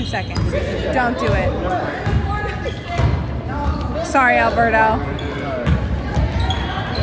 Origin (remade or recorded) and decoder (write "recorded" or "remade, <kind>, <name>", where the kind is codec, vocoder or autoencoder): recorded